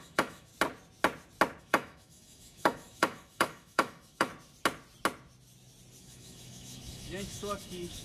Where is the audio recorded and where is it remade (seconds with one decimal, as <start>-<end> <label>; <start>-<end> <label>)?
0.0-0.5 remade; 0.5-1.6 recorded; 1.6-4.3 remade; 4.3-6.0 recorded; 6.0-8.0 remade